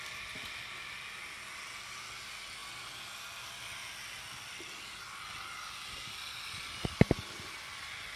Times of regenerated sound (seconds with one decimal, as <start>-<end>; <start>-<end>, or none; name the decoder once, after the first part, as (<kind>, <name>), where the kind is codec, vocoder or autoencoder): none